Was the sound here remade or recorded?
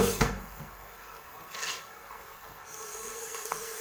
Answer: remade